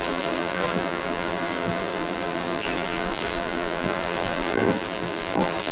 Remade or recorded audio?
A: remade